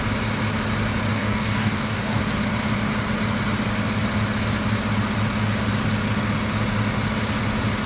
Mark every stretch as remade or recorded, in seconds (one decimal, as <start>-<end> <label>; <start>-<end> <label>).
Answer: 0.0-1.1 recorded; 1.1-2.2 remade; 2.2-7.9 recorded